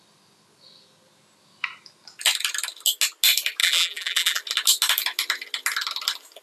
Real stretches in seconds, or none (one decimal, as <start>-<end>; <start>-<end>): 0.0-3.6; 4.4-6.4